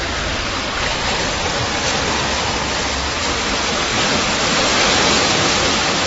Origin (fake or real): real